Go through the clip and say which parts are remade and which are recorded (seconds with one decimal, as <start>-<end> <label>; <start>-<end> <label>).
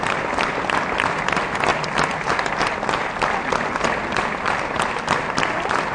0.0-5.9 recorded